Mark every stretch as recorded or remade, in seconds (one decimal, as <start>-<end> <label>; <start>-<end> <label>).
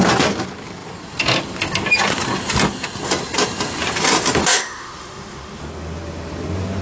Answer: 0.0-4.5 recorded; 4.5-5.6 remade; 5.6-6.8 recorded